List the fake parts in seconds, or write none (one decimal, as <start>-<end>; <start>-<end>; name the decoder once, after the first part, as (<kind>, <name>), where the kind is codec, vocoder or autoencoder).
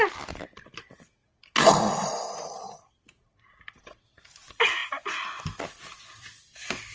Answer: 0.0-1.2 (vocoder, BigVGAN v2); 1.7-4.8; 5.6-6.9